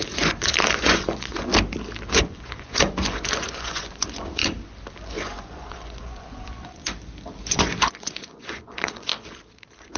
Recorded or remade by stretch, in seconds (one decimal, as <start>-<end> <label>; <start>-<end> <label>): 0.0-1.5 remade; 1.5-2.1 recorded; 2.1-4.4 remade; 4.4-5.1 recorded; 5.1-6.8 remade; 6.8-7.4 recorded; 7.4-9.1 remade; 9.1-10.0 recorded